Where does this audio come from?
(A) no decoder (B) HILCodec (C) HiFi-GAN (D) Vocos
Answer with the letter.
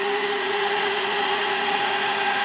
D